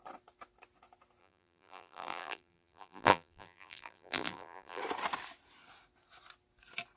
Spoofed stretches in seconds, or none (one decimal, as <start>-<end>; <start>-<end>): 1.2-4.8